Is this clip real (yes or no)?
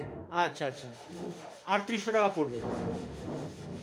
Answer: no